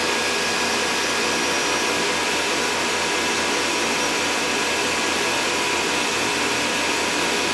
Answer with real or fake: real